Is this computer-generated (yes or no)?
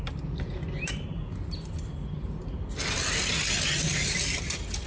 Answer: no